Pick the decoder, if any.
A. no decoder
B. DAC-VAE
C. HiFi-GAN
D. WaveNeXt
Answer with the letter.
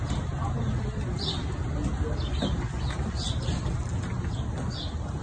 A